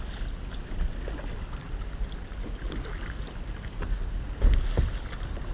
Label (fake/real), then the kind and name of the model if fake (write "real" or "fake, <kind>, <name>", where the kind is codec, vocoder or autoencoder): real